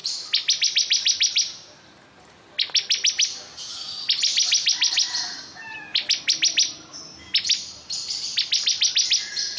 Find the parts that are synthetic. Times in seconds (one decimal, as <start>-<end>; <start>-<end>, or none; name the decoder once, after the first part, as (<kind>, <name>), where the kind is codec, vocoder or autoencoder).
none